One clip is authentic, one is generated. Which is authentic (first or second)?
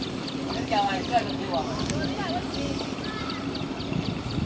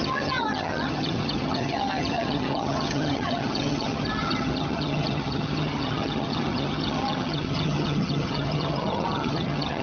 first